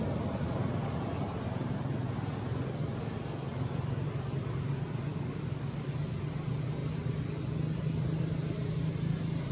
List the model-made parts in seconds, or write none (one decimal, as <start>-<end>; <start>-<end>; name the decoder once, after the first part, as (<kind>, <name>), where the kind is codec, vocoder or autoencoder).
5.1-5.9 (codec, DAC)